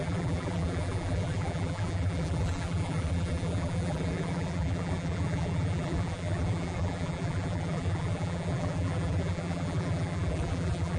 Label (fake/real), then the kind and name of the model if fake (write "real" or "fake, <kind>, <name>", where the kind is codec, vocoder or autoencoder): fake, vocoder, BigVGAN v2